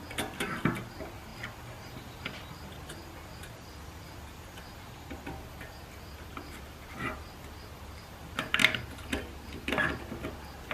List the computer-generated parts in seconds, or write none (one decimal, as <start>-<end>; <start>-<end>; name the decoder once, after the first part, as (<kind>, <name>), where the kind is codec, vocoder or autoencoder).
none